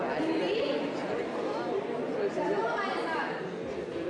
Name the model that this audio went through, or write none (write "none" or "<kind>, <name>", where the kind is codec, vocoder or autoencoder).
none